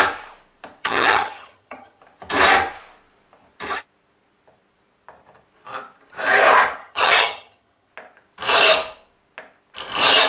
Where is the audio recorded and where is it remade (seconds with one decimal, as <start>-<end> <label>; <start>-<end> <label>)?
0.0-0.8 recorded; 0.8-2.0 remade; 2.0-6.8 recorded; 6.8-7.9 remade; 7.9-10.3 recorded